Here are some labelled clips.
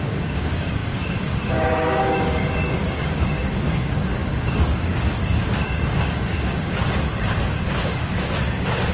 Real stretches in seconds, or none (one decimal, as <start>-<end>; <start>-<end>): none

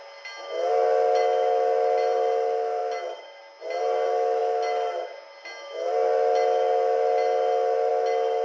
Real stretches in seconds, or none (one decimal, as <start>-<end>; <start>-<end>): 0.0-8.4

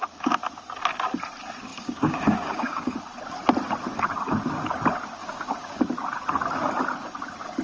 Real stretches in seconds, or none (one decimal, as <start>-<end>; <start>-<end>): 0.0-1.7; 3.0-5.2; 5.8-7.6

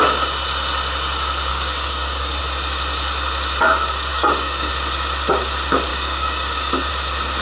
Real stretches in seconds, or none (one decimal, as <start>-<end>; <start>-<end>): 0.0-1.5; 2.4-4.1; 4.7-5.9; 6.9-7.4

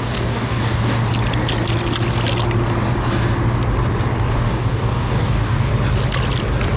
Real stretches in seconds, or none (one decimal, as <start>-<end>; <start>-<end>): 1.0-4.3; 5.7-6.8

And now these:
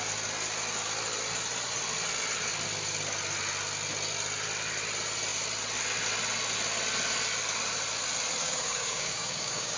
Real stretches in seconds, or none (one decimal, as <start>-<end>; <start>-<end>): 0.0-8.4